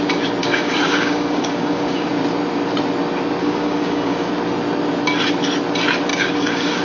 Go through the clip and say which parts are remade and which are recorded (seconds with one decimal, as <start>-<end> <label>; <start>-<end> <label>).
0.0-0.4 recorded; 0.4-2.1 remade; 2.1-3.4 recorded; 3.4-4.3 remade; 4.3-6.1 recorded; 6.1-6.8 remade

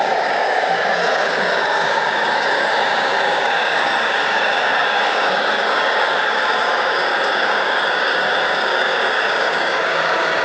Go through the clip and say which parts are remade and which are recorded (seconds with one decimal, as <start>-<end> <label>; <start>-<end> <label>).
0.0-10.4 remade